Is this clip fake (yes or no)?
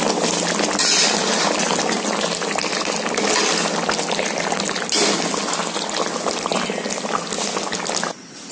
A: no